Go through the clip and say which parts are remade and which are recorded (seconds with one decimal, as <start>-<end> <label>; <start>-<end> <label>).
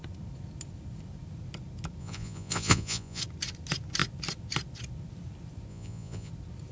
0.0-2.0 recorded; 2.0-3.2 remade; 3.2-5.7 recorded; 5.7-6.3 remade; 6.3-6.7 recorded